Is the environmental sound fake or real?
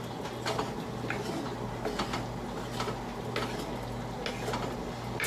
real